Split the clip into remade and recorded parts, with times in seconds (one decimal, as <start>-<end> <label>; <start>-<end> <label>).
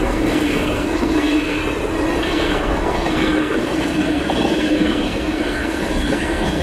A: 0.0-1.6 remade; 1.6-2.2 recorded; 2.2-6.6 remade